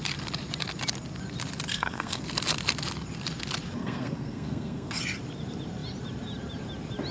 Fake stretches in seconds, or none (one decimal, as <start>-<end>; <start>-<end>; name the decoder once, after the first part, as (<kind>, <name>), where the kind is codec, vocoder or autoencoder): 1.7-2.2 (codec, SNAC); 3.8-5.0